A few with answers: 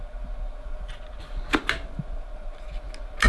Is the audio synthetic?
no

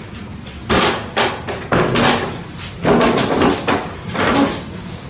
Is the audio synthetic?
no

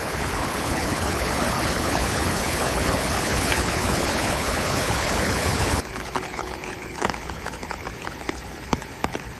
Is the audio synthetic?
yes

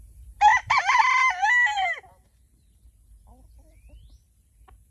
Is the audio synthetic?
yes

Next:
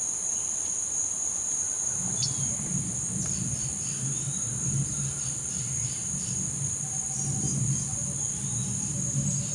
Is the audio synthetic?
no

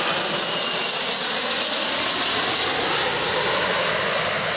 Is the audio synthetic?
no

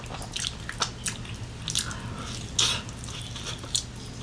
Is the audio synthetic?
no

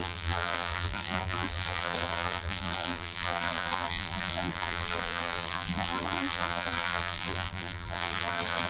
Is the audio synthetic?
yes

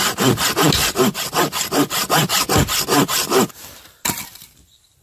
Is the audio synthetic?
no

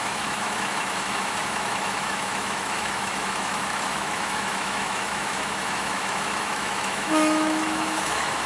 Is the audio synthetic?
yes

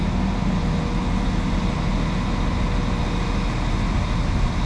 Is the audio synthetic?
no